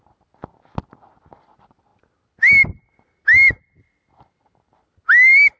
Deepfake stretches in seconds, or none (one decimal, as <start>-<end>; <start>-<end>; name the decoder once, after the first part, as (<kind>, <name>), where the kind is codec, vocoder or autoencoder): none